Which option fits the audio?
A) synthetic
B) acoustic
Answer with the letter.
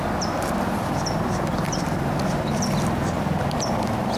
A